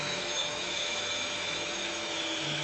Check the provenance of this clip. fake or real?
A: fake